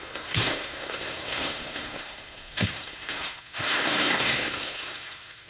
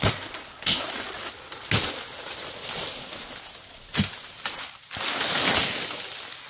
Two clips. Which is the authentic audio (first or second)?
second